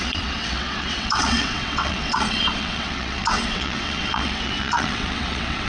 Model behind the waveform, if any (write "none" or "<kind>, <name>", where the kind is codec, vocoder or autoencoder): vocoder, WaveNeXt